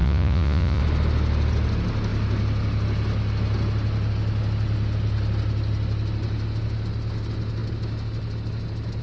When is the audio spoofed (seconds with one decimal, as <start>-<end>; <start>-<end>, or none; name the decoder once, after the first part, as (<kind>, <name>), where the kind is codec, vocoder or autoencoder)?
0.0-0.8 (vocoder, Vocos)